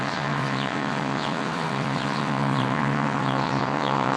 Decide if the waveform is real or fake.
fake